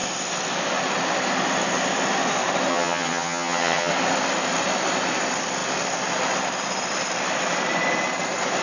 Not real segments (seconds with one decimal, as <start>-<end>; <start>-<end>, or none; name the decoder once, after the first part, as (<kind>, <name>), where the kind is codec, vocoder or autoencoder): 2.7-3.9 (vocoder, HiFi-GAN)